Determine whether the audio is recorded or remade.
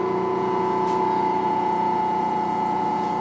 remade